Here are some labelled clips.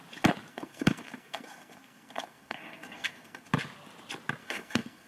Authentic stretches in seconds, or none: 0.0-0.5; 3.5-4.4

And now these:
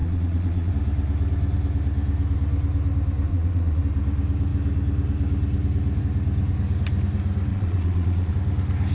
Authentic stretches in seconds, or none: 0.7-3.3; 3.8-7.5; 8.3-8.9

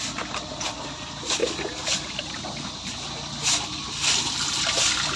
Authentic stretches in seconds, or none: 0.0-5.2